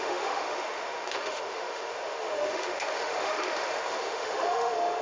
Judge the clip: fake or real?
fake